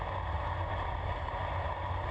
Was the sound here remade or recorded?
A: recorded